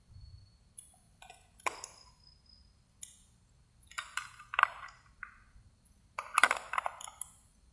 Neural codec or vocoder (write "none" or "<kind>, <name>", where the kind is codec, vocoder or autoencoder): none